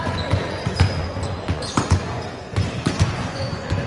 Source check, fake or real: fake